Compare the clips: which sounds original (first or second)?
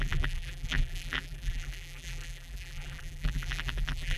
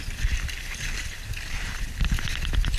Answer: second